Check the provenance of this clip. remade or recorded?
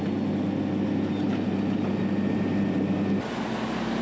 recorded